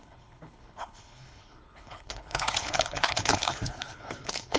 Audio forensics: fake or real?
fake